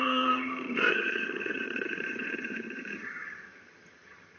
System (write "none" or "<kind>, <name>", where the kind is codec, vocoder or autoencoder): vocoder, HiFi-GAN